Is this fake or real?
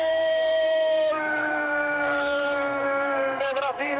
fake